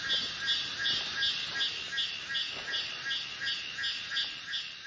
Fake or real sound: real